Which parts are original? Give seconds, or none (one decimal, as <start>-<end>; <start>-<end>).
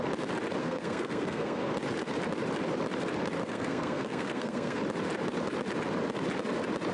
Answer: 0.0-0.6; 1.7-3.4; 4.8-6.9